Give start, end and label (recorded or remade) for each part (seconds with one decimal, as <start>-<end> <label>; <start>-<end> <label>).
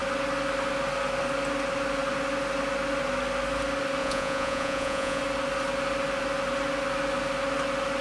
0.0-4.0 recorded; 4.0-5.2 remade; 5.2-8.0 recorded